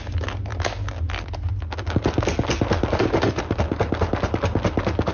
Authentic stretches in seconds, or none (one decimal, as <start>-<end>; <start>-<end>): 0.0-5.1